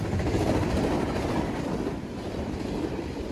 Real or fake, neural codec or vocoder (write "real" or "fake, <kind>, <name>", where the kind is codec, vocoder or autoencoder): real